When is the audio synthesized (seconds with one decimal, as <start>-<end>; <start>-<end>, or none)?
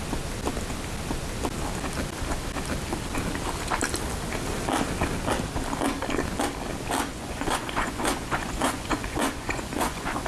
7.1-10.3